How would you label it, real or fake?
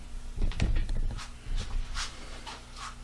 real